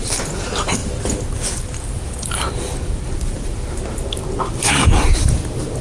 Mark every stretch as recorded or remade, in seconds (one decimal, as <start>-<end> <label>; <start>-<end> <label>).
0.0-5.8 recorded